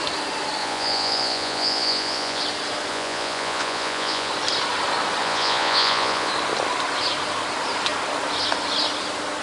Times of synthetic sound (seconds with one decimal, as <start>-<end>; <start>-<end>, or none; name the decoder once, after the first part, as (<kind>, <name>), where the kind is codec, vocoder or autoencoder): 0.6-2.4 (vocoder, Vocos); 2.9-4.3; 5.2-6.3